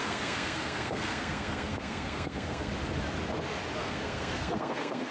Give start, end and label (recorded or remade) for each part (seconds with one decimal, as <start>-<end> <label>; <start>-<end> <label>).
0.0-2.7 remade; 2.7-3.8 recorded; 3.8-5.1 remade